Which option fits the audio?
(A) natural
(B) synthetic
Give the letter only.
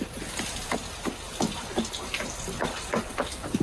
A